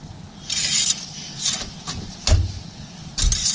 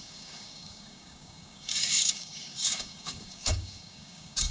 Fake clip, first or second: second